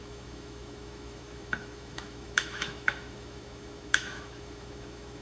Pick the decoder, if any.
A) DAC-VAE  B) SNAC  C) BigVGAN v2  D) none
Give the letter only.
A